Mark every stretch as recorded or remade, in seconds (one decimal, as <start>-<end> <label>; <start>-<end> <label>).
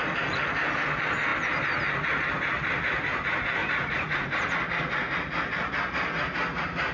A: 0.0-3.6 recorded; 3.6-4.5 remade; 4.5-6.9 recorded